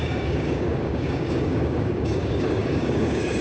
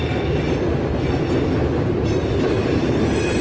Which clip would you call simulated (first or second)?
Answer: first